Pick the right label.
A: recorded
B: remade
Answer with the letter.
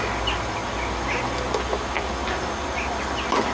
A